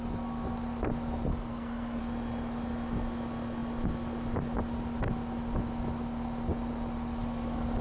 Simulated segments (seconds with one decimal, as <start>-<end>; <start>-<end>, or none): 1.3-2.0